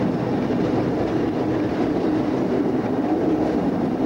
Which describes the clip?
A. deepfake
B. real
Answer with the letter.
B